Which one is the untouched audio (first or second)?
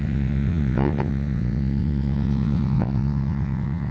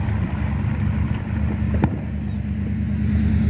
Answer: second